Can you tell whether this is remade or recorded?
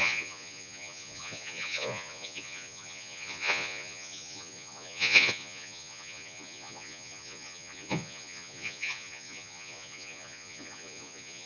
remade